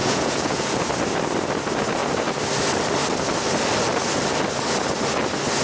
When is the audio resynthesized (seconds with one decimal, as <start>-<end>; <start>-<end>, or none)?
0.0-0.9